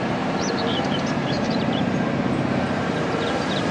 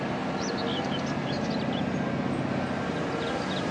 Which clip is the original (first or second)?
second